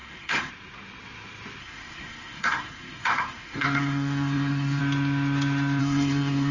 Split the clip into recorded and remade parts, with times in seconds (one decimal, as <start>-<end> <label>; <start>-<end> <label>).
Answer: 0.0-0.5 remade; 0.5-1.6 recorded; 1.6-4.8 remade; 4.8-5.8 recorded; 5.8-6.5 remade

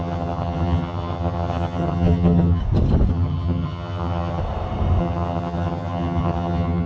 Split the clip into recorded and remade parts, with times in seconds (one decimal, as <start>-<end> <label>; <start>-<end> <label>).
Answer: 0.0-2.6 remade; 2.6-3.1 recorded; 3.1-4.4 remade; 4.4-5.0 recorded; 5.0-6.9 remade

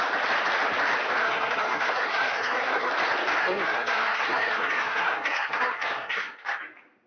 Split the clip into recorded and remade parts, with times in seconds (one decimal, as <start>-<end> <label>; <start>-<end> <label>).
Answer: 0.0-1.2 recorded; 1.2-2.9 remade; 2.9-3.4 recorded; 3.4-6.6 remade; 6.6-7.1 recorded

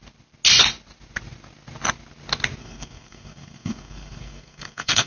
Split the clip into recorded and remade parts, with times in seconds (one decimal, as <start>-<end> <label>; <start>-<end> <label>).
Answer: 0.0-2.6 recorded; 2.6-5.1 remade

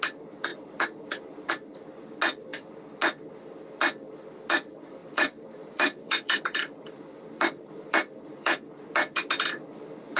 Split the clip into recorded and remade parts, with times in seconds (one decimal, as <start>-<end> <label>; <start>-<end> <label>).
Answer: 0.0-0.5 recorded; 0.5-1.5 remade; 1.5-5.0 recorded; 5.0-8.6 remade; 8.6-10.2 recorded

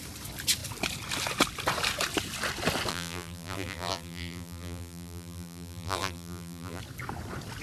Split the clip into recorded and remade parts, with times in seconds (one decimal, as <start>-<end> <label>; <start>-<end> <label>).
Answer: 0.0-2.9 recorded; 2.9-6.8 remade; 6.8-7.6 recorded

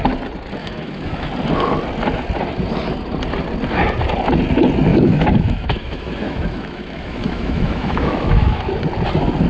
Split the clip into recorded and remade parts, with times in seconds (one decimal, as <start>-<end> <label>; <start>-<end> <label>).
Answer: 0.0-0.6 recorded; 0.6-1.3 remade; 1.3-4.9 recorded; 4.9-8.6 remade; 8.6-9.5 recorded